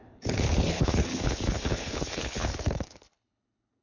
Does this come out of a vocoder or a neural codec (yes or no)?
yes